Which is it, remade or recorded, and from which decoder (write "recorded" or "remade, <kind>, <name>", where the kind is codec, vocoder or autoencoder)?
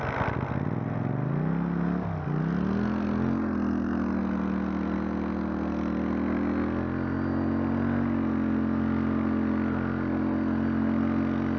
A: recorded